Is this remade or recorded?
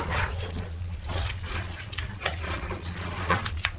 remade